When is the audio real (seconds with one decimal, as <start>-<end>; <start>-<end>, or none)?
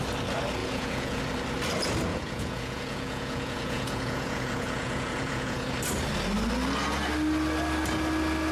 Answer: 0.0-0.6; 1.2-2.1; 5.7-8.5